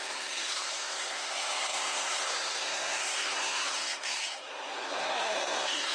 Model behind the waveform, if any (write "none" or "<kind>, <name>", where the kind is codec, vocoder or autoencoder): codec, SNAC